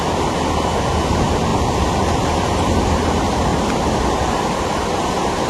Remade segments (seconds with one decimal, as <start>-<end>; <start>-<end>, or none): 1.5-2.8; 3.5-4.7